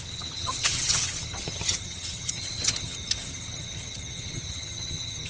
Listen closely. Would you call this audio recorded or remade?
remade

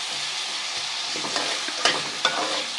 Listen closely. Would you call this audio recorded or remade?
recorded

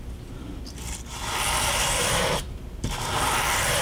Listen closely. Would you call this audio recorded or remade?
remade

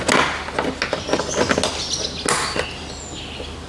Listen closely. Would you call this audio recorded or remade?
recorded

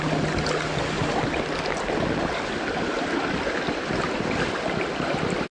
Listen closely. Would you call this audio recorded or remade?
recorded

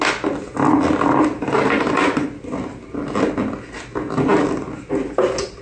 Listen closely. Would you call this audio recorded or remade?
recorded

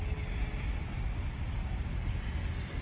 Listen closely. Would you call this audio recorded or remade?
recorded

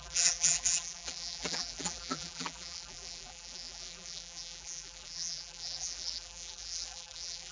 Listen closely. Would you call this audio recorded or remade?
remade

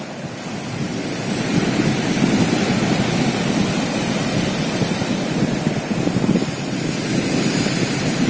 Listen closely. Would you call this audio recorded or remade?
recorded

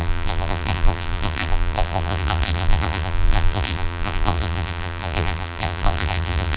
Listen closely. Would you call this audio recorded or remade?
remade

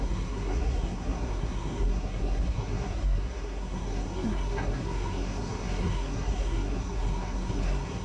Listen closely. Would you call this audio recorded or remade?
remade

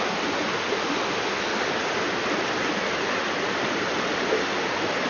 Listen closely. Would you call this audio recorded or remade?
recorded